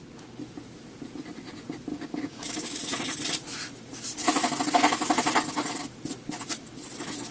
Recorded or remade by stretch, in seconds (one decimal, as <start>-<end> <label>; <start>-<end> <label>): 0.0-1.9 recorded; 1.9-2.8 remade; 2.8-7.3 recorded

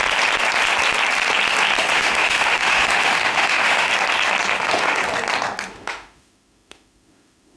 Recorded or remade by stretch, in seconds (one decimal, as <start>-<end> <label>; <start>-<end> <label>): 0.0-1.9 recorded; 1.9-3.9 remade; 3.9-4.6 recorded; 4.6-5.0 remade; 5.0-5.7 recorded; 5.7-7.6 remade

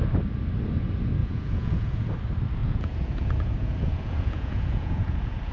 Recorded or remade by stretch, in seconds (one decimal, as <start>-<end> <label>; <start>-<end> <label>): 0.0-1.2 recorded; 1.2-2.0 remade; 2.0-2.6 recorded; 2.6-5.5 remade

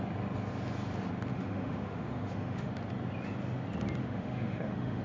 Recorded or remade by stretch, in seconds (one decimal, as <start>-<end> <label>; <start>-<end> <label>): 0.0-1.3 recorded; 1.3-2.7 remade; 2.7-4.0 recorded; 4.0-5.0 remade